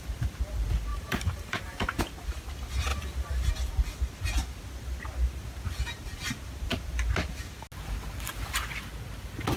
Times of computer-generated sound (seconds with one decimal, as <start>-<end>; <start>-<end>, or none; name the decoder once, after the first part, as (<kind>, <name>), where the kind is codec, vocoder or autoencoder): 0.9-2.0 (vocoder, BigVGAN v2); 2.9-3.5

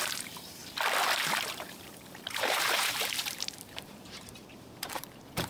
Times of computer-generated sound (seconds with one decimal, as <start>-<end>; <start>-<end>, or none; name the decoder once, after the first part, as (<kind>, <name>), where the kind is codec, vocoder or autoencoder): 0.0-0.6 (vocoder, BigVGAN v2); 1.5-5.5